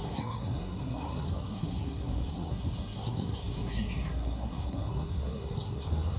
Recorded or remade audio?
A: remade